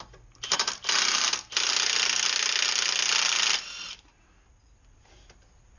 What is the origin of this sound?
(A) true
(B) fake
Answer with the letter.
A